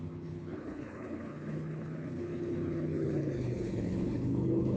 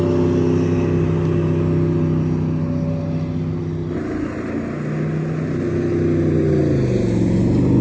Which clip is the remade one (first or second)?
first